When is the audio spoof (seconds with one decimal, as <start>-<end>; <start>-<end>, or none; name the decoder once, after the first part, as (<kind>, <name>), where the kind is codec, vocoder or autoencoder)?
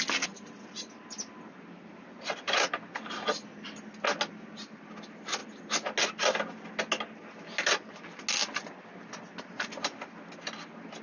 none